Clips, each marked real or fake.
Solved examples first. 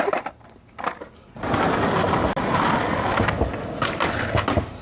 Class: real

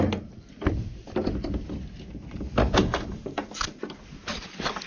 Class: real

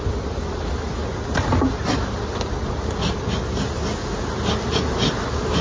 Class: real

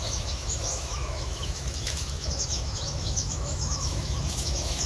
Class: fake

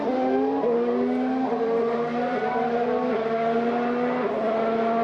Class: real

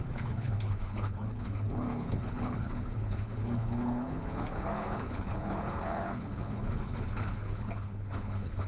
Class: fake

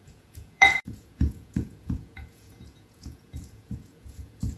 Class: fake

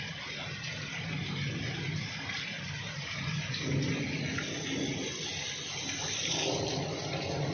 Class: real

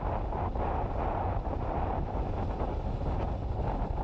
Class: real